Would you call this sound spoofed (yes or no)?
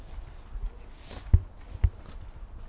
no